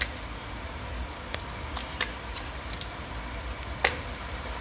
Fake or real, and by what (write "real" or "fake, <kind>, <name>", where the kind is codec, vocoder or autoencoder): real